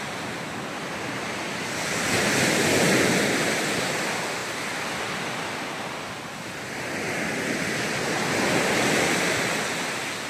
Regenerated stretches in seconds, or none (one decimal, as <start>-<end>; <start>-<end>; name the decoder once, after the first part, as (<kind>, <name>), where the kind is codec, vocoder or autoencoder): none